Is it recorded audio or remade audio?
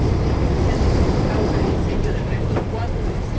recorded